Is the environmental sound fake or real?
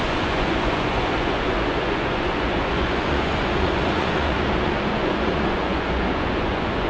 fake